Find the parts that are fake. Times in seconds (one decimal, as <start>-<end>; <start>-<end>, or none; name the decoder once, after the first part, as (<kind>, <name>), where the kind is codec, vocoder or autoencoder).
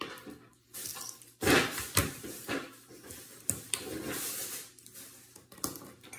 0.9-2.9 (vocoder, BigVGAN v2)